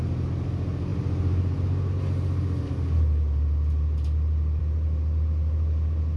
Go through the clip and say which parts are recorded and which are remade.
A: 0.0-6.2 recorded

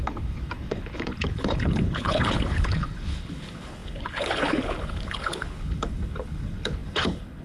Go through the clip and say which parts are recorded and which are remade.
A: 0.0-7.4 remade

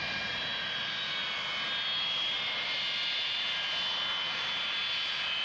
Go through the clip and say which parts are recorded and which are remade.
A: 0.0-5.4 recorded

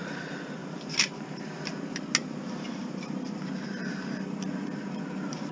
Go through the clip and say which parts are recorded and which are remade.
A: 0.0-5.5 recorded